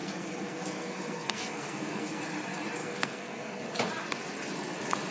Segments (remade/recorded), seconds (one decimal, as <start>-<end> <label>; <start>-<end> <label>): 0.0-2.2 remade; 2.2-2.8 recorded; 2.8-3.6 remade; 3.6-5.1 recorded